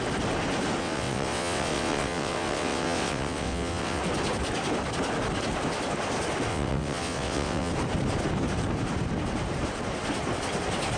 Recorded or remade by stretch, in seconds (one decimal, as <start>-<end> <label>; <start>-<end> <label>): 0.0-0.8 recorded; 0.8-4.0 remade; 4.0-6.5 recorded; 6.5-7.7 remade; 7.7-11.0 recorded